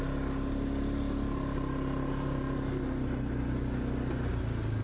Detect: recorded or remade recorded